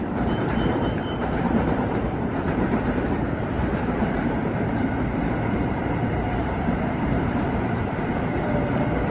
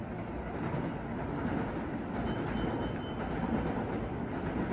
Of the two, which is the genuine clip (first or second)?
second